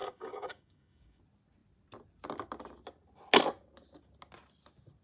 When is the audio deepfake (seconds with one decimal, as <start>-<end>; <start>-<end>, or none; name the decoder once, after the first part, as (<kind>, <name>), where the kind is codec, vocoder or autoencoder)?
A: 0.0-1.2 (codec, DAC)